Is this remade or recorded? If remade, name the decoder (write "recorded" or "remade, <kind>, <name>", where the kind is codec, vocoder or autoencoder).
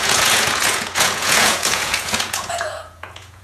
remade, vocoder, Vocos